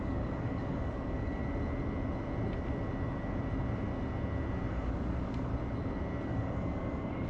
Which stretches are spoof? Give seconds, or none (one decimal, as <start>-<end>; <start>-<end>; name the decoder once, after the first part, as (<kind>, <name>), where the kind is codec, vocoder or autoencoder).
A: 0.0-1.4 (codec, DAC); 4.7-5.5; 6.2-7.3